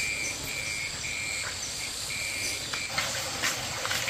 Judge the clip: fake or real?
real